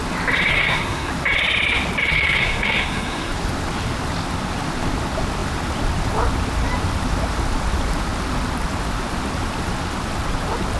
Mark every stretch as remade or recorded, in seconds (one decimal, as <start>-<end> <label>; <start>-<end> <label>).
0.0-0.5 recorded; 0.5-1.1 remade; 1.1-2.1 recorded; 2.1-3.3 remade; 3.3-10.8 recorded